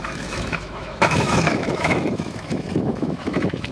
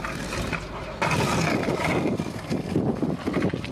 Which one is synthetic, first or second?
first